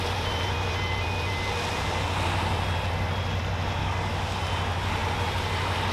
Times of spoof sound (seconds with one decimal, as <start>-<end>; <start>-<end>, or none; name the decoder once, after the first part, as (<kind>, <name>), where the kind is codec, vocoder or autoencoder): 3.8-4.4 (codec, DAC)